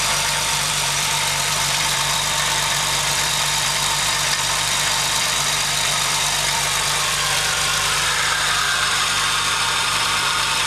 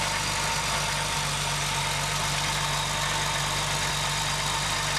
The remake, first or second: first